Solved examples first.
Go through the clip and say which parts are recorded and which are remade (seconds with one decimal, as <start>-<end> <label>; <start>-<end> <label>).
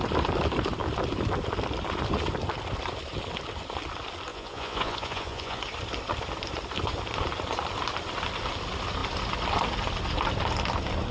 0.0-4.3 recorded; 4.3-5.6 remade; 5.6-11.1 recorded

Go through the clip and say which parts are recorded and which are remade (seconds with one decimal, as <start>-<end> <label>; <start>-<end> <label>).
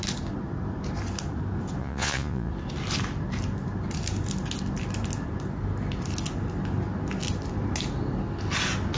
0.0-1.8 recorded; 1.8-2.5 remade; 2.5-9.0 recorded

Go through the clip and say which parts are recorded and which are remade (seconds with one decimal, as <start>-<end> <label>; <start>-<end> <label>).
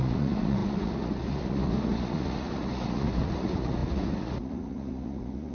0.0-5.5 remade